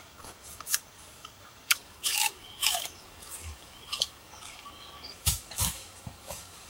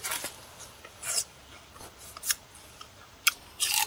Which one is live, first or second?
second